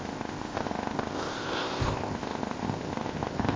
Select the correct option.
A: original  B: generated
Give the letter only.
B